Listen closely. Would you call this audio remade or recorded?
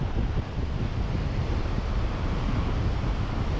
recorded